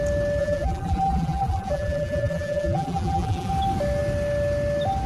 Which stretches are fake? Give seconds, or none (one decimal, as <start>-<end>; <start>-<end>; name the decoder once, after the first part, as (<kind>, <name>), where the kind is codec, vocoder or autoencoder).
0.4-3.5 (vocoder, BigVGAN v2)